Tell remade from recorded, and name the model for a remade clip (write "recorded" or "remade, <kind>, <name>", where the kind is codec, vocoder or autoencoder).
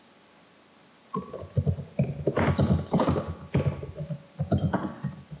recorded